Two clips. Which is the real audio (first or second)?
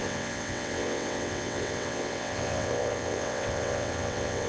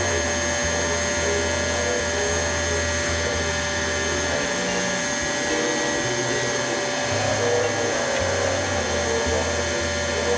second